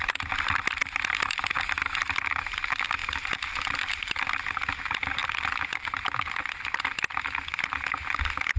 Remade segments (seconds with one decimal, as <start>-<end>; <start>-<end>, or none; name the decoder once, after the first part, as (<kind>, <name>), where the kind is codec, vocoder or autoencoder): 3.0-4.8 (vocoder, BigVGAN v2); 5.2-6.5